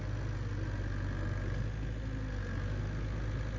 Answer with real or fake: real